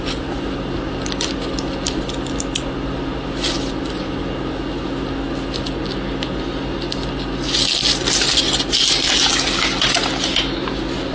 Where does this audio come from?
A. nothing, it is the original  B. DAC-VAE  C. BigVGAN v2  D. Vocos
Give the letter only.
A